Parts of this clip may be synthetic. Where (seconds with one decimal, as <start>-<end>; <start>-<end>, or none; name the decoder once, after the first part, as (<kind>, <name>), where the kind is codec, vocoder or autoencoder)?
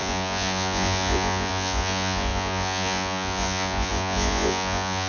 0.0-5.1 (vocoder, Vocos)